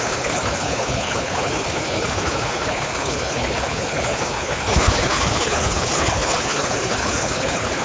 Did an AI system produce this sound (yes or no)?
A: yes